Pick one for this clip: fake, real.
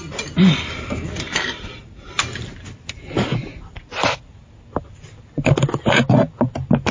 real